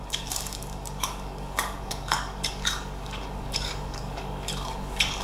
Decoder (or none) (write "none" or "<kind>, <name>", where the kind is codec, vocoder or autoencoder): codec, DAC